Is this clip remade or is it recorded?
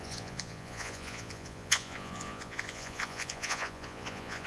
remade